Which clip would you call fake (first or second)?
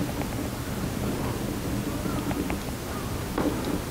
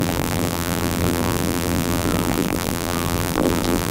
second